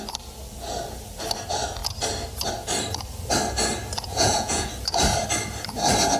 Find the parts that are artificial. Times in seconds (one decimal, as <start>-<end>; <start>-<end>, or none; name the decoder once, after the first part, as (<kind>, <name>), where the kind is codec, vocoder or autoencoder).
4.1-4.7 (vocoder, Vocos)